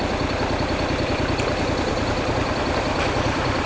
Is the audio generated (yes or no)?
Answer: yes